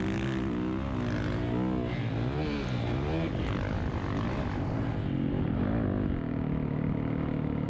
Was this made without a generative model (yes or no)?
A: yes